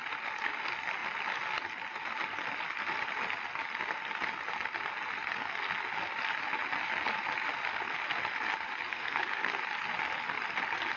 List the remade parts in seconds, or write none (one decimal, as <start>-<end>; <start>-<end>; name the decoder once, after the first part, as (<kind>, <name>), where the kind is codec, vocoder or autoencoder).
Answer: 8.9-9.6 (codec, SNAC)